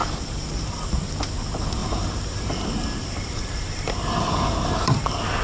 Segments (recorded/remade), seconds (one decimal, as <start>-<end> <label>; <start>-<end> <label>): 0.0-0.9 remade; 0.9-1.8 recorded; 1.8-5.0 remade; 5.0-5.4 recorded